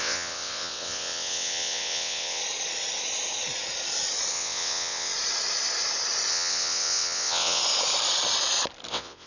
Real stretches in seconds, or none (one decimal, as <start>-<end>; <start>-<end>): 2.4-4.3; 5.1-6.3; 7.6-8.9